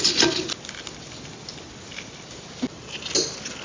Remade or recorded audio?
recorded